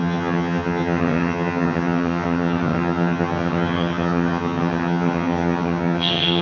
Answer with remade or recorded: remade